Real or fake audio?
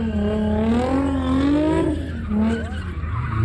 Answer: real